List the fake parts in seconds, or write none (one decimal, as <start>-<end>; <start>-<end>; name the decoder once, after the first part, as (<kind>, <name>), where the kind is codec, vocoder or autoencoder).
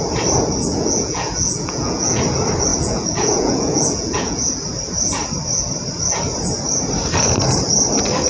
0.7-2.2 (vocoder, Vocos); 2.7-4.4